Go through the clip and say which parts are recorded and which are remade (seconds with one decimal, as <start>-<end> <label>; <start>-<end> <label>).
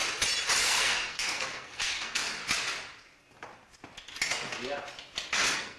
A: 0.0-0.6 recorded; 0.6-2.4 remade; 2.4-5.3 recorded; 5.3-5.8 remade